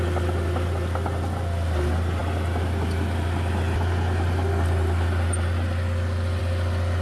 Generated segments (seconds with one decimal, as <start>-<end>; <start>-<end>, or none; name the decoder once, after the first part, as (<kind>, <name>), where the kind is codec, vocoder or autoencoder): none

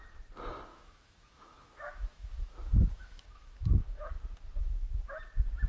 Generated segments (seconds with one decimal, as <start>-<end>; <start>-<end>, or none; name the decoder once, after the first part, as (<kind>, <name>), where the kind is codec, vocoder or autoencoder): 0.7-4.1 (autoencoder, DAC-VAE); 4.6-5.1

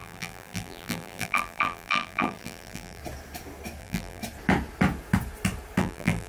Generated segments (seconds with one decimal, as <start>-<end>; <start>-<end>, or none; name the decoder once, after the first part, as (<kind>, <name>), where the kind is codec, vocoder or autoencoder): 0.0-3.0 (vocoder, BigVGAN v2); 3.8-4.2; 5.8-6.3

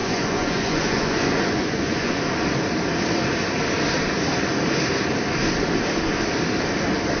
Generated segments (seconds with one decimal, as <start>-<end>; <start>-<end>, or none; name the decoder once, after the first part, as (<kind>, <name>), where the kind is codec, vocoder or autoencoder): 0.0-2.2 (vocoder, Vocos)

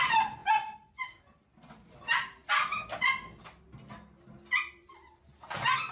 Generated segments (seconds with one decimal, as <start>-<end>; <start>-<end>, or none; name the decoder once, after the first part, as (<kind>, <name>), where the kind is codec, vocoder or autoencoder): 0.4-1.0 (vocoder, Vocos)

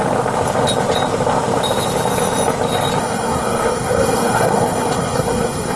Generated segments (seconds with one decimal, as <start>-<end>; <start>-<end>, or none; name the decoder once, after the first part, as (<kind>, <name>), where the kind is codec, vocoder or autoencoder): 3.0-5.8 (codec, SNAC)

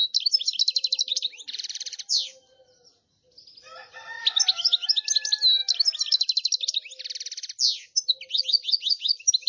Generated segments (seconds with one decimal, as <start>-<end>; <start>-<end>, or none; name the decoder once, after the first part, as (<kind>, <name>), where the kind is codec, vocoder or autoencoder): 1.1-2.6 (vocoder, BigVGAN v2)

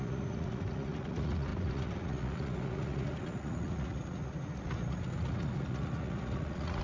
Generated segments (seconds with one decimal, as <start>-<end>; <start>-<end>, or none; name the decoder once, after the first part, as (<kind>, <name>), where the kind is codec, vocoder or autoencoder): 0.0-6.8 (vocoder, Vocos)